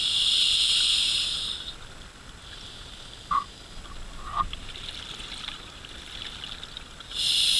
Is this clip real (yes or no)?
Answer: yes